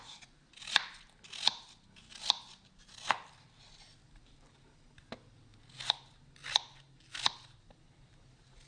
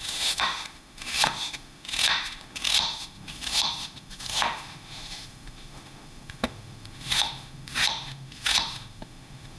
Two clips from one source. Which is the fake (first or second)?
second